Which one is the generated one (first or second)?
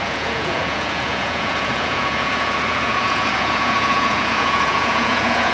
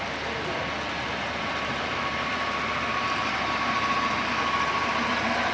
first